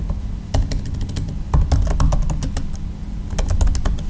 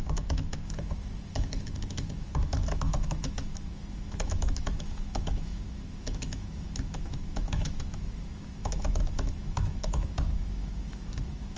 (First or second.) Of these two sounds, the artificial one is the second